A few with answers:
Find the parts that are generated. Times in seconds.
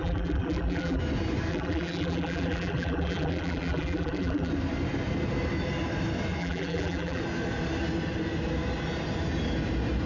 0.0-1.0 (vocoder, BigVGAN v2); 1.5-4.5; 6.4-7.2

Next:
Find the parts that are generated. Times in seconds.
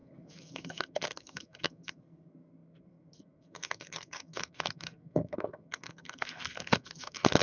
0.0-7.4 (codec, SNAC)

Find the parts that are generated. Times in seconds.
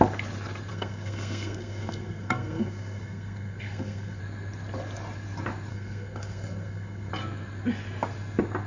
0.7-4.2 (codec, SNAC); 5.7-7.1